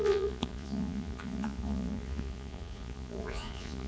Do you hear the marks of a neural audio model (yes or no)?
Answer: yes